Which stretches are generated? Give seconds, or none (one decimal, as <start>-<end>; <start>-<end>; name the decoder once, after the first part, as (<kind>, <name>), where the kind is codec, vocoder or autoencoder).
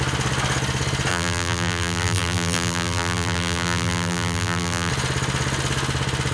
1.1-4.9 (vocoder, BigVGAN v2)